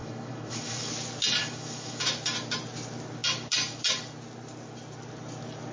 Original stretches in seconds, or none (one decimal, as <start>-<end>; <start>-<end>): 0.9-1.4; 2.0-5.7